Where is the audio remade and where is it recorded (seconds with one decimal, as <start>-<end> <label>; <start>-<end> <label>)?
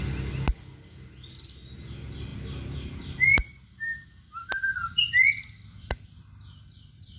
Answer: 0.0-7.2 recorded